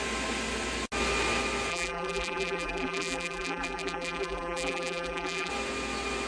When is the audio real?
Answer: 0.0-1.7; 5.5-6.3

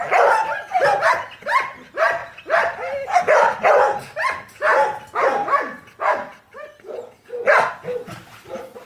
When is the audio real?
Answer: 0.0-0.4; 1.0-2.2; 3.7-8.9

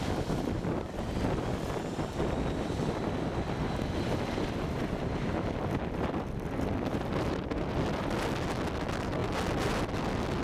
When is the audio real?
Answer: 0.0-10.4

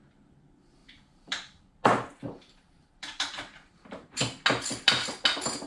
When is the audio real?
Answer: 0.0-0.8; 4.2-5.7

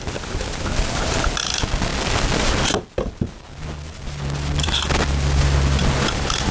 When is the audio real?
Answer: 0.0-6.5

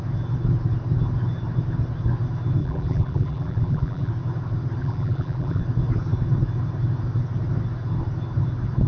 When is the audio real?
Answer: 0.0-2.6; 4.1-4.8; 5.6-8.9

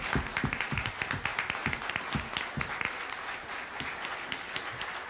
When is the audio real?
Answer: 0.0-5.1